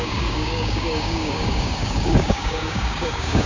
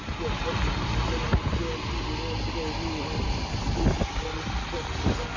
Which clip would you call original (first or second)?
second